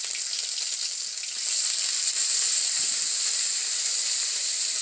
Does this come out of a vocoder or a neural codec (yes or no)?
no